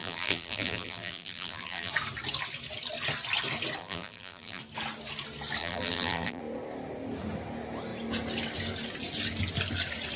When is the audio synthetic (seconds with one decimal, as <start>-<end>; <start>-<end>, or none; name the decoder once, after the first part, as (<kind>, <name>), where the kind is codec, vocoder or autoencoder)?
0.0-1.9 (vocoder, BigVGAN v2); 3.8-4.6; 5.6-6.4